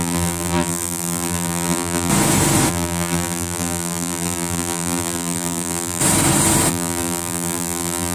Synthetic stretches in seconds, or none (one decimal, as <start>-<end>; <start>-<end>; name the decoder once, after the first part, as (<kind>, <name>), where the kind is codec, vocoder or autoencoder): 0.0-2.1 (vocoder, BigVGAN v2); 2.7-6.0; 6.7-8.1